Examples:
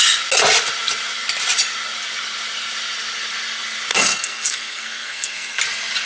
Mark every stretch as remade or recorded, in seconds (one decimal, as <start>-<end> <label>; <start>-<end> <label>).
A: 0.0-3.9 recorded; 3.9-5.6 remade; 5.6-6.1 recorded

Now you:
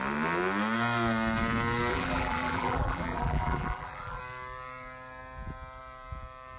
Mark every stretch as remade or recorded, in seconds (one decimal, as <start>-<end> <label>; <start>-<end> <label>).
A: 0.0-1.9 recorded; 1.9-4.2 remade; 4.2-6.6 recorded

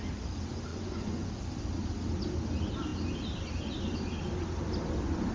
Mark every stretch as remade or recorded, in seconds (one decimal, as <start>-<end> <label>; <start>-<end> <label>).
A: 0.0-0.7 recorded; 0.7-1.3 remade; 1.3-5.3 recorded

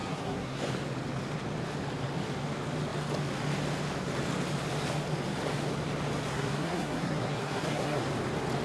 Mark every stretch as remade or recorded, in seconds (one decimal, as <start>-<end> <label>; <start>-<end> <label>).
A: 0.0-0.6 remade; 0.6-6.3 recorded; 6.3-8.1 remade; 8.1-8.6 recorded

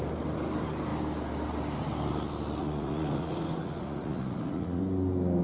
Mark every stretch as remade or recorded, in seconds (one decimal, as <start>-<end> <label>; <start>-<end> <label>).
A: 0.0-2.6 recorded; 2.6-4.8 remade; 4.8-5.4 recorded

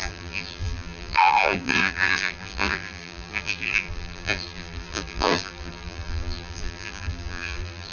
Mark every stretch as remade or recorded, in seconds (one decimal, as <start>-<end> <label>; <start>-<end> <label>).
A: 0.0-7.9 remade